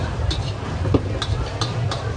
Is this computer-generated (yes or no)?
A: no